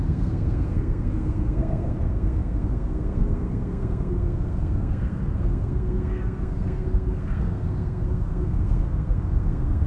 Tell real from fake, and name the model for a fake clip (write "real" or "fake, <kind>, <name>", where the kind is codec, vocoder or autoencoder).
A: fake, codec, SNAC